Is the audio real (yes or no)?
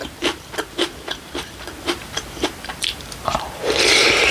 no